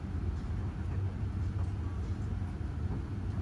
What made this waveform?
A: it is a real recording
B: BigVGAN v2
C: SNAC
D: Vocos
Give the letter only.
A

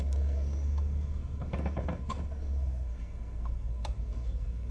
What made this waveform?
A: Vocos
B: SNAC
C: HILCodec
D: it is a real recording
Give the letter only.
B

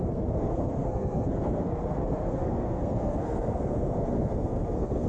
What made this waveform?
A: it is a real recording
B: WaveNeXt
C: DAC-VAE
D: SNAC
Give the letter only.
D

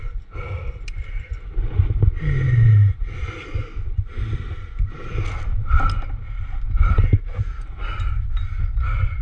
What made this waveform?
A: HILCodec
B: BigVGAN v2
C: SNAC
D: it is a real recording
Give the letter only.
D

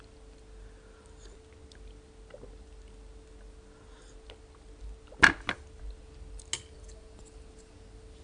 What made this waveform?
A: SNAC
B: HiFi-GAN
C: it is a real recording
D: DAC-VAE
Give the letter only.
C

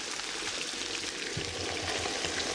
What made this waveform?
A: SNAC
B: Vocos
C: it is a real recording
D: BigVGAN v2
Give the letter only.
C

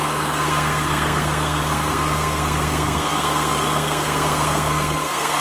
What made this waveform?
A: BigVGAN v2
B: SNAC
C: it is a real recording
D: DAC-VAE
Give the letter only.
B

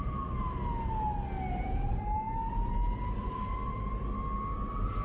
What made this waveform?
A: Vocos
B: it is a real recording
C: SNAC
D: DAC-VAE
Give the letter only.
B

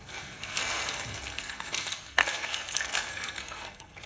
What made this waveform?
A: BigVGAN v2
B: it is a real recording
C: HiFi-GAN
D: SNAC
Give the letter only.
D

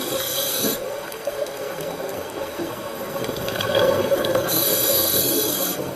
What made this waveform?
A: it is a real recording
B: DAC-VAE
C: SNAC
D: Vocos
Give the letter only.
C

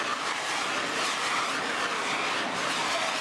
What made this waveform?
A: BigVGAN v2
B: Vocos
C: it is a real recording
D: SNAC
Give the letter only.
C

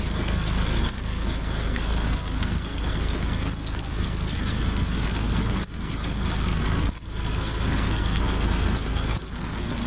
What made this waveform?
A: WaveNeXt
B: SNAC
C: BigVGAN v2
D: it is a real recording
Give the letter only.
B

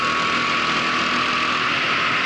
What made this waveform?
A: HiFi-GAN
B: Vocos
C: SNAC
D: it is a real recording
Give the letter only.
D